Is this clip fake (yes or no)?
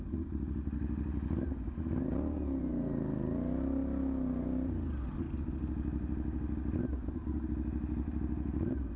no